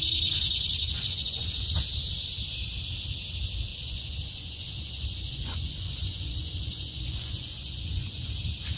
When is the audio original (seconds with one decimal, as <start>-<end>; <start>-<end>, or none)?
0.0-0.7; 1.8-3.7; 8.3-8.8